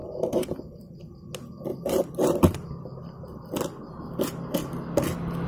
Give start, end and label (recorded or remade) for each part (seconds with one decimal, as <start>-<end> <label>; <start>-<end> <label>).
0.0-5.5 recorded